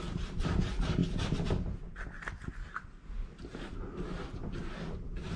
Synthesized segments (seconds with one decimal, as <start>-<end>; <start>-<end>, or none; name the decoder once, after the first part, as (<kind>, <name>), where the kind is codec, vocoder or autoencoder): none